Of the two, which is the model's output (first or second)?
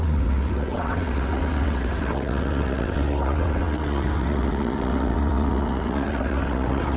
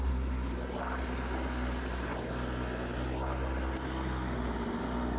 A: first